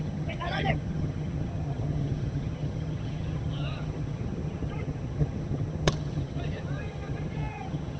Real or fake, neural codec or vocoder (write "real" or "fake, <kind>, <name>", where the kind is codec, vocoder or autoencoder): fake, vocoder, HiFi-GAN